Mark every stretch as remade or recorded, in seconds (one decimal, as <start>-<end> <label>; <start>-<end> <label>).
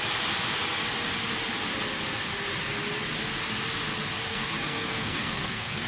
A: 0.0-4.3 recorded; 4.3-5.9 remade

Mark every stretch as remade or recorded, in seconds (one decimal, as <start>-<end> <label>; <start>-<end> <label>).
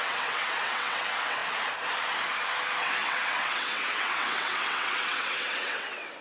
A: 0.0-1.4 remade; 1.4-2.8 recorded; 2.8-6.2 remade